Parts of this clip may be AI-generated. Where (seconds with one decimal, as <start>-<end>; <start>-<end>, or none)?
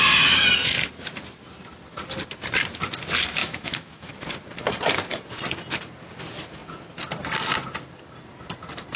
3.4-4.1